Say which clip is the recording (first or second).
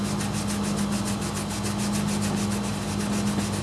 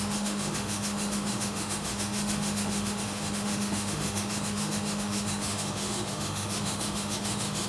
first